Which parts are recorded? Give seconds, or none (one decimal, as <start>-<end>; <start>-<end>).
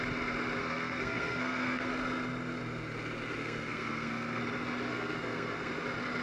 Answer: 0.0-0.6; 1.9-3.4; 4.4-4.9; 5.7-6.2